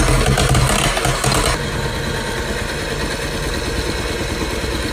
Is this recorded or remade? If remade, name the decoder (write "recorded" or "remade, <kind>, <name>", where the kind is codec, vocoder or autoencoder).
recorded